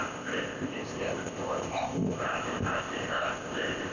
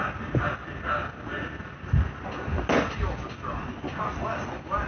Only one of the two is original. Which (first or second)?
second